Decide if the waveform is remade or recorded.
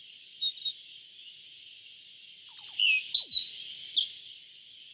recorded